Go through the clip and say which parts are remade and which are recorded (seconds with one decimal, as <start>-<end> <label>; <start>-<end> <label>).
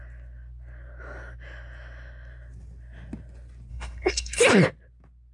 0.0-3.7 recorded; 3.7-4.4 remade; 4.4-5.3 recorded